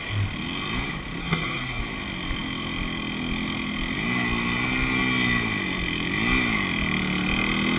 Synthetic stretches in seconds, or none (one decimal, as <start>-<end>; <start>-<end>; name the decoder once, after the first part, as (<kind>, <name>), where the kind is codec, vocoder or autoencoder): 1.2-1.8 (codec, SNAC)